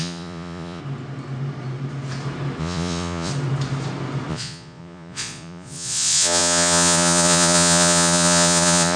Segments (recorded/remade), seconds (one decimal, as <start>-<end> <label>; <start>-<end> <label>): 0.0-0.8 remade; 0.8-2.6 recorded; 2.6-3.3 remade; 3.3-4.3 recorded; 4.3-9.0 remade